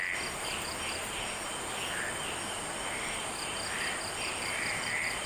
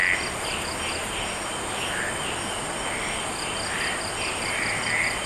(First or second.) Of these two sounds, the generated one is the first